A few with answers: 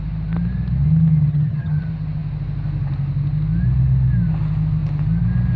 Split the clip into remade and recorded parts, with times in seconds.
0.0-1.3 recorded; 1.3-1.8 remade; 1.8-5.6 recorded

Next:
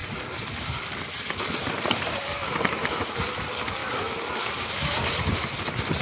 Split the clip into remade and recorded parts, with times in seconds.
0.0-2.3 recorded; 2.3-3.0 remade; 3.0-3.8 recorded; 3.8-4.7 remade; 4.7-6.0 recorded

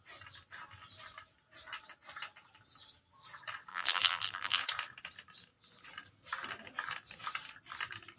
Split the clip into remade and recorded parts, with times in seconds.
0.0-3.7 recorded; 3.7-4.6 remade; 4.6-8.2 recorded

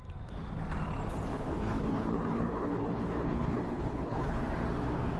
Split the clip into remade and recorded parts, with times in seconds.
0.0-1.3 recorded; 1.3-4.4 remade; 4.4-5.2 recorded

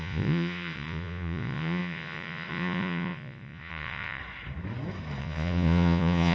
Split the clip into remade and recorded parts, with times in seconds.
0.0-4.2 remade; 4.2-5.2 recorded; 5.2-6.3 remade

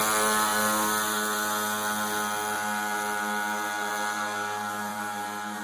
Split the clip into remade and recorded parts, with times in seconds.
0.0-4.9 recorded; 4.9-5.6 remade